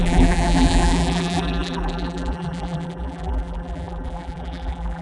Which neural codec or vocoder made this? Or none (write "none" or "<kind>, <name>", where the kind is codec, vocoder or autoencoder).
vocoder, BigVGAN v2